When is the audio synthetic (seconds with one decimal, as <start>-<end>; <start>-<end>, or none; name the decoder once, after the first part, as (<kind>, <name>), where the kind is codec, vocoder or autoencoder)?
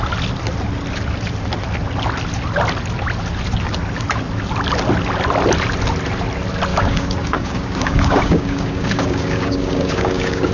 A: 6.7-10.5 (codec, DAC)